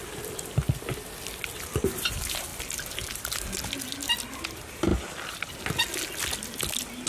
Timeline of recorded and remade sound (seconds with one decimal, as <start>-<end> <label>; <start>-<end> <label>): 0.0-7.1 recorded